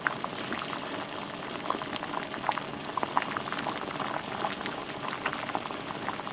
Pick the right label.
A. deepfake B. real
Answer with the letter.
B